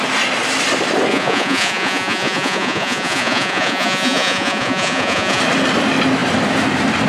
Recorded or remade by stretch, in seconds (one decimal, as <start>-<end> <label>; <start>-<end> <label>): 0.0-1.1 recorded; 1.1-5.4 remade; 5.4-7.1 recorded